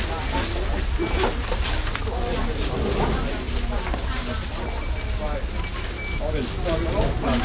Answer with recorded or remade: recorded